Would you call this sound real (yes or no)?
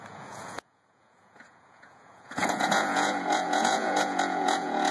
no